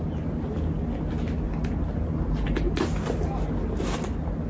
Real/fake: real